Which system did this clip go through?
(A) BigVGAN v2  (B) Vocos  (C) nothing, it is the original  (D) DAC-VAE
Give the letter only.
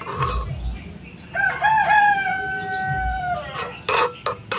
C